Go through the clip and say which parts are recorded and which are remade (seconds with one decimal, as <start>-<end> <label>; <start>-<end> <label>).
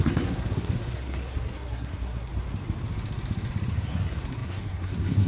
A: 0.0-2.3 remade; 2.3-3.7 recorded; 3.7-5.3 remade